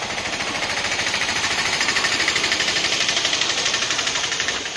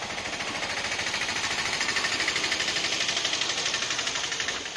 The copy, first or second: first